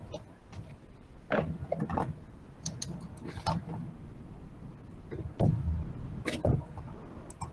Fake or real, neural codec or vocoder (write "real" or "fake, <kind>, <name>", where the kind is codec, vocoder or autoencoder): real